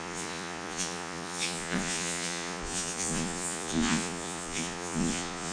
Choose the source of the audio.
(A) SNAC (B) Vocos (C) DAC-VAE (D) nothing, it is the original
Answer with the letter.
B